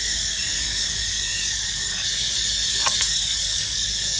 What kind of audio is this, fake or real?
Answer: fake